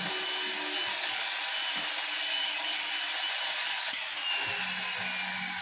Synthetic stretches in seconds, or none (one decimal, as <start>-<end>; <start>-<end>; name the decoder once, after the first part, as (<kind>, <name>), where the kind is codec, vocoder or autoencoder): 0.9-1.4 (codec, DAC); 2.3-2.9; 3.6-4.1